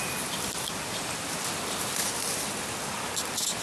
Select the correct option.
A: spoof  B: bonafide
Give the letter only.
B